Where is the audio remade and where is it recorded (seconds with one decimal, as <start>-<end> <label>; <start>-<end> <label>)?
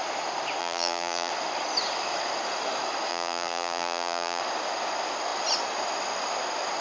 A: 0.0-0.6 recorded; 0.6-1.3 remade; 1.3-3.1 recorded; 3.1-4.4 remade; 4.4-6.8 recorded